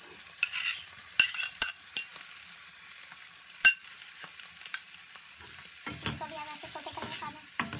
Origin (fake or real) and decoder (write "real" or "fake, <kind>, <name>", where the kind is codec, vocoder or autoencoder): real